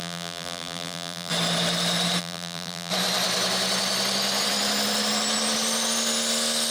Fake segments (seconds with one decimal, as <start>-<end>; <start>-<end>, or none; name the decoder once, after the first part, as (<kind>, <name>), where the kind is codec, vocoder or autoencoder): 0.0-1.3 (vocoder, BigVGAN v2); 2.2-2.9